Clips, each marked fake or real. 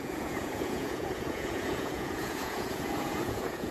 fake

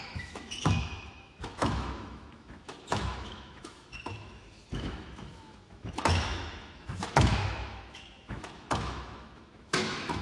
fake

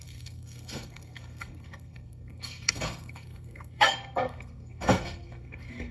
fake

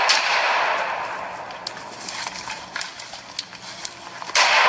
real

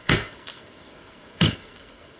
fake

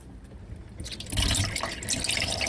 real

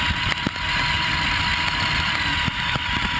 real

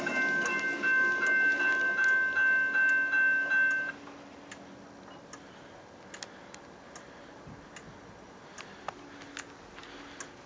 real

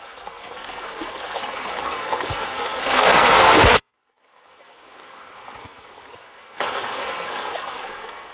fake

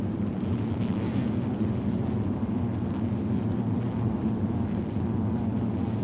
real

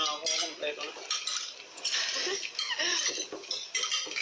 real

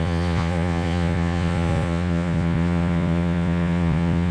fake